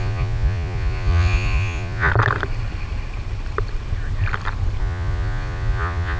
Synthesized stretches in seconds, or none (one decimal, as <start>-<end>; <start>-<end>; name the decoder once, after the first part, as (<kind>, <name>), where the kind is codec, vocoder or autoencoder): 0.0-2.1 (vocoder, Vocos); 4.8-6.2

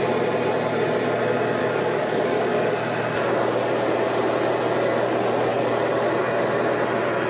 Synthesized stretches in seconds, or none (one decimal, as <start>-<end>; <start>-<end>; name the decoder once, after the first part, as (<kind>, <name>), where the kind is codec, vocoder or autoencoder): 1.6-2.7 (codec, DAC)

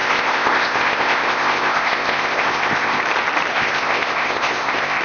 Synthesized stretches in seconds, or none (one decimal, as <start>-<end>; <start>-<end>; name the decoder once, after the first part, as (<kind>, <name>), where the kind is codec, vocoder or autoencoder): 0.0-3.0 (codec, ZipCodec); 3.5-5.0